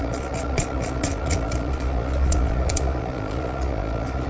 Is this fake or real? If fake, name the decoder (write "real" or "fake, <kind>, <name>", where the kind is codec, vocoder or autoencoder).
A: fake, vocoder, Vocos